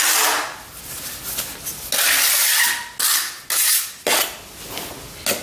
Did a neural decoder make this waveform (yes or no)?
no